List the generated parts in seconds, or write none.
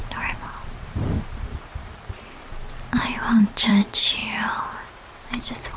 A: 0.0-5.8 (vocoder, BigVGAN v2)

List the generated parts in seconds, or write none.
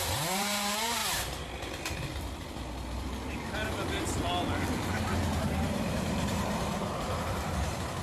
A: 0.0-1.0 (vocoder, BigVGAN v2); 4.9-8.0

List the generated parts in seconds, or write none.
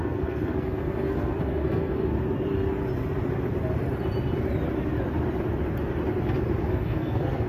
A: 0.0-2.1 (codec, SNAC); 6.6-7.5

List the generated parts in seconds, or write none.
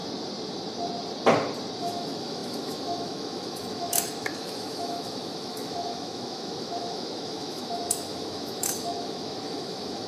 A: 1.8-10.1 (autoencoder, DAC-VAE)